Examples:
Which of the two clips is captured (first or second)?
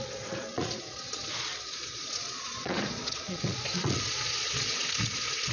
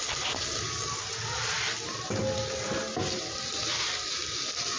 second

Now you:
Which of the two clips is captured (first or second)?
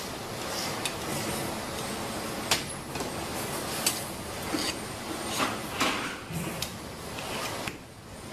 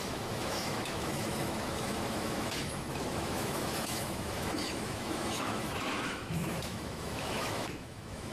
first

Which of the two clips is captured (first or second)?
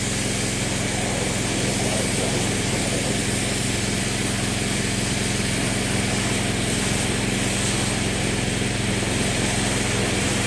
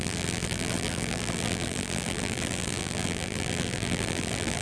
first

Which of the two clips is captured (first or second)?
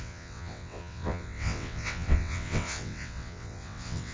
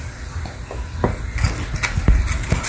second